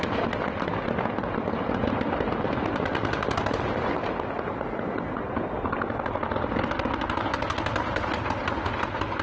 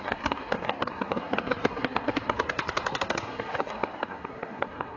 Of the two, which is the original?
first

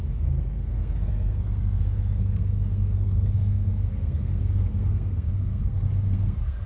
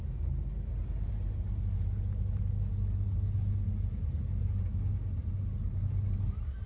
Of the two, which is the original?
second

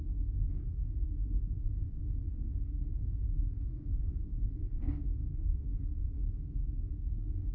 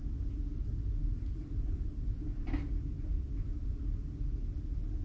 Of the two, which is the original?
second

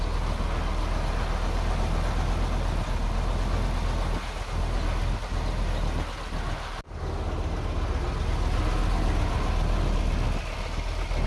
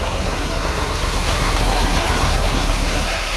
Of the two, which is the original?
first